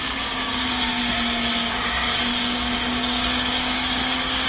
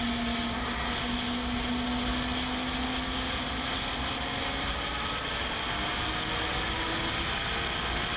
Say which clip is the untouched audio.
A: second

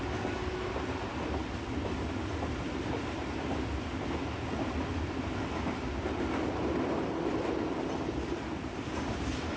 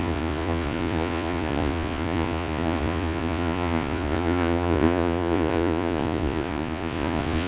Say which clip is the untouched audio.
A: first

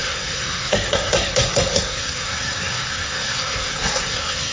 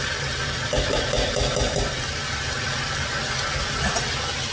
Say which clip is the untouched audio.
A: second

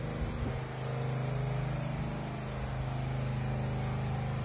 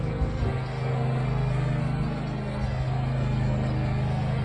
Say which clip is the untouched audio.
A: first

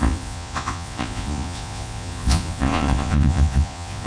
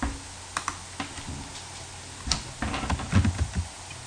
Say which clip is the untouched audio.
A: second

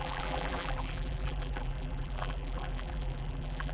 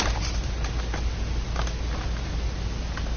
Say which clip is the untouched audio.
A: second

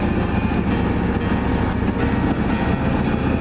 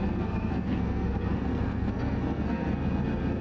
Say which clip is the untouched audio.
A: first